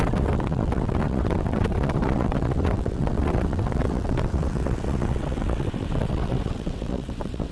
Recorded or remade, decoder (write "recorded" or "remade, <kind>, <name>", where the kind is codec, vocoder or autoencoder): remade, vocoder, WaveNeXt